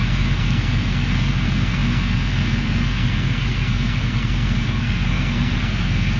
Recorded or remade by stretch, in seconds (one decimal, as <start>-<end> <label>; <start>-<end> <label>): 0.0-6.2 remade